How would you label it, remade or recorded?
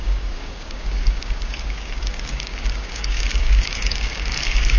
remade